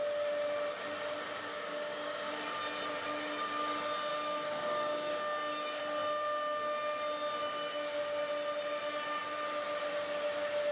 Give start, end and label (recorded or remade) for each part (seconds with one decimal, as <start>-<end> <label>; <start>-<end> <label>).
0.0-1.5 recorded; 1.5-2.4 remade; 2.4-4.1 recorded; 4.1-5.8 remade; 5.8-7.4 recorded; 7.4-8.2 remade; 8.2-10.7 recorded